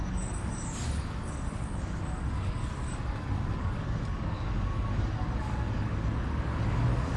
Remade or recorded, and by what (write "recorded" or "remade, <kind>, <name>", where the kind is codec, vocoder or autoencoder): remade, codec, DAC